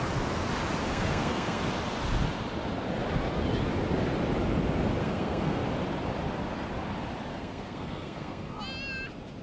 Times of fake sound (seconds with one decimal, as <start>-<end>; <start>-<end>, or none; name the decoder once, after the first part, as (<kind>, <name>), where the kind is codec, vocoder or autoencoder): 0.8-1.6 (codec, SNAC); 5.0-5.6; 7.3-8.6